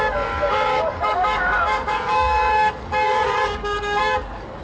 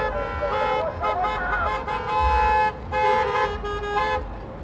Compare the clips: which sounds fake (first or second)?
first